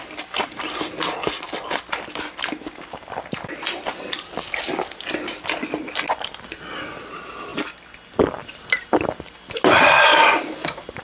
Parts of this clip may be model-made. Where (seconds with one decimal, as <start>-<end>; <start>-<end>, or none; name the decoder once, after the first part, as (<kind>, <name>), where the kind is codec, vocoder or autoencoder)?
none